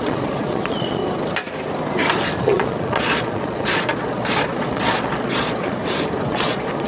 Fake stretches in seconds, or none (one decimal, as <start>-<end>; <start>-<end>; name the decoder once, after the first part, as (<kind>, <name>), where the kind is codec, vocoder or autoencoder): 0.0-1.0 (vocoder, Vocos); 2.4-5.8; 6.3-6.9